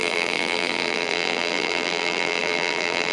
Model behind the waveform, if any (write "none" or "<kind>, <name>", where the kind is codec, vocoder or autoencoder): vocoder, BigVGAN v2